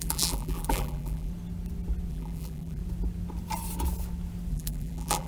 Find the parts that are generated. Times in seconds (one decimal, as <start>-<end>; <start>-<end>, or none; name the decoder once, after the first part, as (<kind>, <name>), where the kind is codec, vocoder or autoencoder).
0.0-1.3 (vocoder, BigVGAN v2); 2.1-2.8; 4.5-5.3